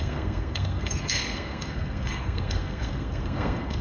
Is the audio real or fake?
fake